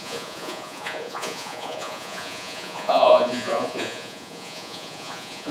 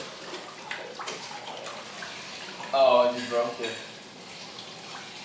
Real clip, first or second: second